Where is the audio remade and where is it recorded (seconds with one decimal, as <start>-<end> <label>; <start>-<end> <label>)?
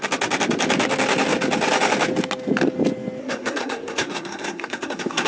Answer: 0.0-3.2 recorded; 3.2-5.3 remade